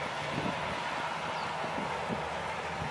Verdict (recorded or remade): recorded